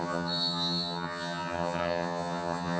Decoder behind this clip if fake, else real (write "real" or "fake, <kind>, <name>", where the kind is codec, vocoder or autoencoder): fake, vocoder, HiFi-GAN